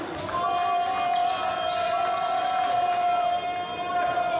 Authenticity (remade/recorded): recorded